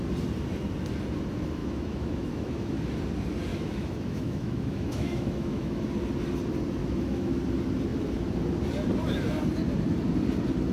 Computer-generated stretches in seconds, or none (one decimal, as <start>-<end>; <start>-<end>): 1.6-2.8; 3.5-5.8; 6.8-7.4